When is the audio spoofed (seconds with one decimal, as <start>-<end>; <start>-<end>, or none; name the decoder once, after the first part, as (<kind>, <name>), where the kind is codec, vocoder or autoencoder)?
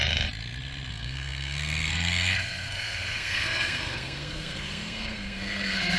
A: 0.9-6.0 (codec, SNAC)